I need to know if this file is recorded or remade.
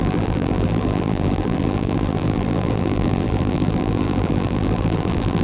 remade